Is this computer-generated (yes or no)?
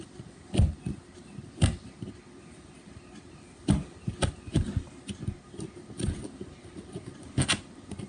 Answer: no